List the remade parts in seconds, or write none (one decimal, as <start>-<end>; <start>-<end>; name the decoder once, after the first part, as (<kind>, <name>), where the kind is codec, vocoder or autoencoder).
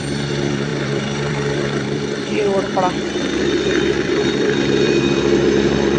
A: 0.0-6.0 (vocoder, BigVGAN v2)